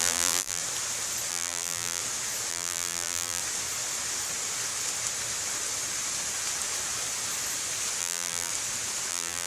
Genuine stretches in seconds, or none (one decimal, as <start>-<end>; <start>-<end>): 0.6-1.3; 2.0-2.5; 3.4-8.0; 8.5-9.1